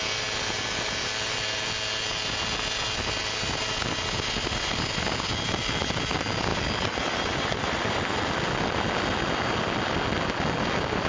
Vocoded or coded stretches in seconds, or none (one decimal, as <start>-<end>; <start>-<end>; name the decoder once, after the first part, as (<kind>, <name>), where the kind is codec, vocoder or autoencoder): none